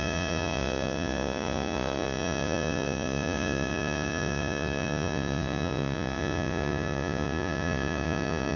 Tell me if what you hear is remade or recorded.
remade